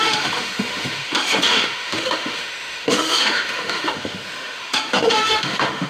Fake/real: fake